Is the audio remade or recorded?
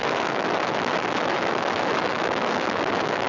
remade